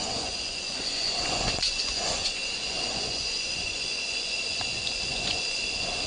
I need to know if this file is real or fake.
fake